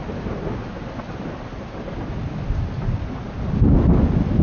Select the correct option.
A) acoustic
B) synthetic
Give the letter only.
A